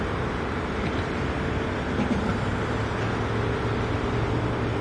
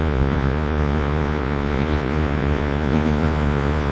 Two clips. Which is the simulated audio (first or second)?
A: second